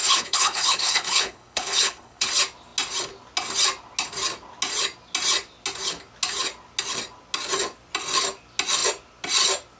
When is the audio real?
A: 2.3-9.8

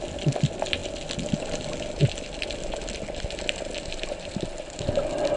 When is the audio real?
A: 0.0-5.4

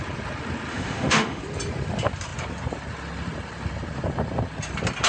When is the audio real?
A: 0.0-0.7; 1.4-5.1

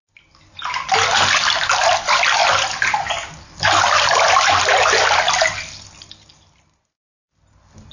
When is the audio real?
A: 0.0-7.9

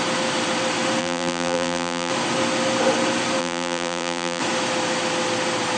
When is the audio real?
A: 0.0-1.0; 2.1-3.4; 4.4-5.8

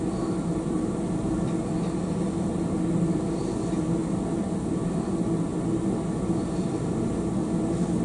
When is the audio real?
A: 0.0-8.0

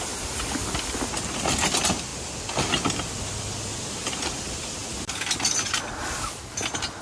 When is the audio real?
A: 0.0-7.0

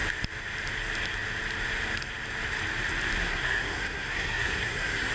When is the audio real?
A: 0.0-3.2